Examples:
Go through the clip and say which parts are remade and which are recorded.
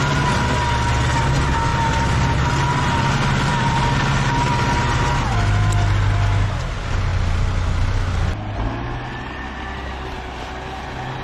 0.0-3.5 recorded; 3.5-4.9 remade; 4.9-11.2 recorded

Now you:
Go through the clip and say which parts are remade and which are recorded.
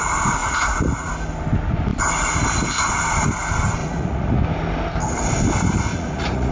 0.0-0.4 recorded; 0.4-1.1 remade; 1.1-3.8 recorded; 3.8-4.4 remade; 4.4-5.9 recorded; 5.9-6.5 remade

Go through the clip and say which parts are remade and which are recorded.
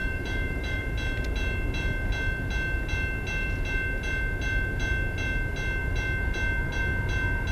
0.0-0.8 remade; 0.8-7.5 recorded